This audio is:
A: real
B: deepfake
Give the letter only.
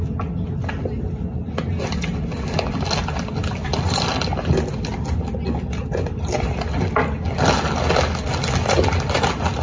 A